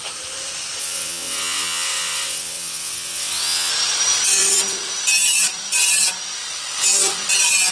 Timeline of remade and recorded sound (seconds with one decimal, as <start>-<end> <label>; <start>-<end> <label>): 0.0-0.8 recorded; 0.8-3.7 remade; 3.7-7.7 recorded

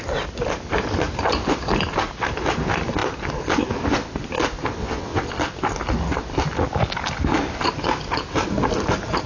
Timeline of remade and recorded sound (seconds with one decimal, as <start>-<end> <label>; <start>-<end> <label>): 0.0-4.8 recorded; 4.8-5.3 remade; 5.3-9.3 recorded